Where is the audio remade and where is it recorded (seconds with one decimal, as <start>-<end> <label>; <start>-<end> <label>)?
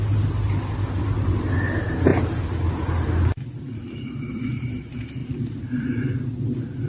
0.0-6.9 recorded